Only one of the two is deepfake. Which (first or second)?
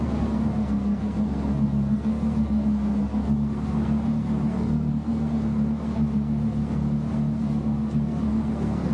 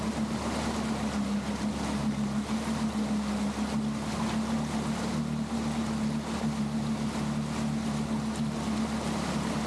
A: first